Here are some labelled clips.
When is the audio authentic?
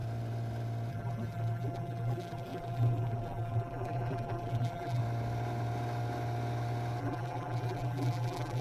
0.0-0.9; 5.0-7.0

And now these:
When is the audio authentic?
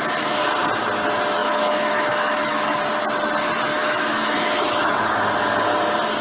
0.0-1.4; 2.8-3.7; 5.3-6.2